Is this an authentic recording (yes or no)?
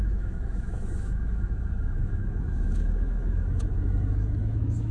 no